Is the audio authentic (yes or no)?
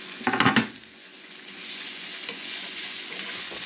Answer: no